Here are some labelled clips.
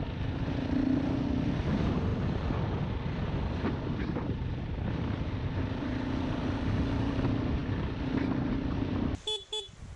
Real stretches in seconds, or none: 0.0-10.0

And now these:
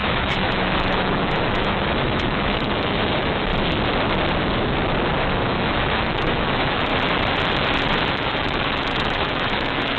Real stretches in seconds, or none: 3.5-5.3; 6.9-8.1

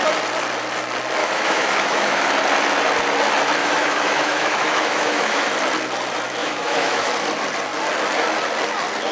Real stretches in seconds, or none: 0.0-1.2; 2.3-3.6; 5.5-6.4; 7.1-9.1